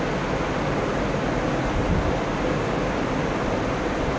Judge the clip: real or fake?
real